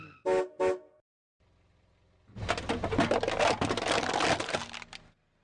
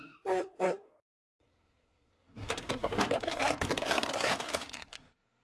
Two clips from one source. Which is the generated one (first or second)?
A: second